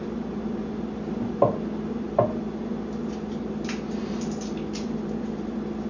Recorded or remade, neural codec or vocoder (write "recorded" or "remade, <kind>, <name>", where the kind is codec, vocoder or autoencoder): recorded